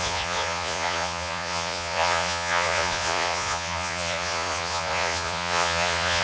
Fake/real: fake